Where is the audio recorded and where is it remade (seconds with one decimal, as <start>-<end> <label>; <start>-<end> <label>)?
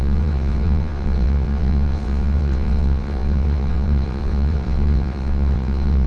0.0-6.1 remade